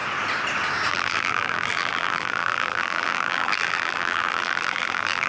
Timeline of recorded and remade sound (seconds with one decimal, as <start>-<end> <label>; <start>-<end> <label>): 0.0-0.9 recorded; 0.9-5.3 remade